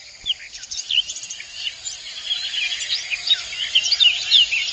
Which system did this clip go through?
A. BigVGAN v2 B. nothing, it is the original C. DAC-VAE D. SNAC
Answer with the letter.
B